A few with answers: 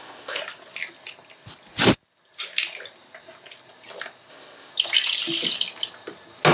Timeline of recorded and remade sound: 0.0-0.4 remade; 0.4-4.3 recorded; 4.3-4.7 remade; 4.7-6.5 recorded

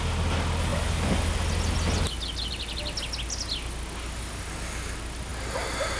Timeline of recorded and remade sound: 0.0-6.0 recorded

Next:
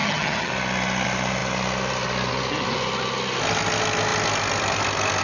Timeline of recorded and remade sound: 0.0-0.5 remade; 0.5-5.2 recorded

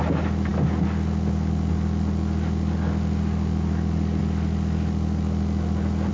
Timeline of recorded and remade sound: 0.0-6.1 recorded

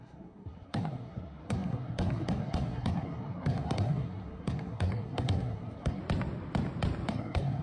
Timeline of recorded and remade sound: 0.0-6.0 remade; 6.0-7.1 recorded; 7.1-7.6 remade

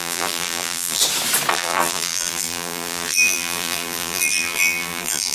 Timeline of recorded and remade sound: 0.0-1.0 remade; 1.0-1.5 recorded; 1.5-5.3 remade